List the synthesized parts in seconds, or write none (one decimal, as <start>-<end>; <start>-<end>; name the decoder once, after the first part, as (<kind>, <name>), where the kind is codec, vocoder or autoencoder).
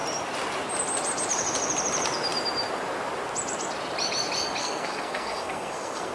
4.6-6.1 (codec, SNAC)